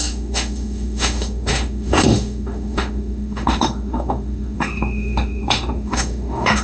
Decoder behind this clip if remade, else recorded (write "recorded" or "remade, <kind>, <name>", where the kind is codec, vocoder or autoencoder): remade, autoencoder, DAC-VAE